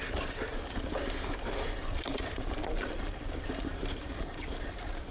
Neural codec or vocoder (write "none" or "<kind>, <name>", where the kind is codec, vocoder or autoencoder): vocoder, BigVGAN v2